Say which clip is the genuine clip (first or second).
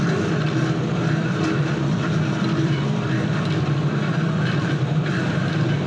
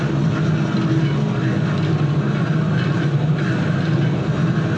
second